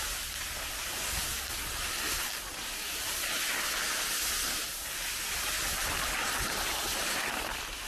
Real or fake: real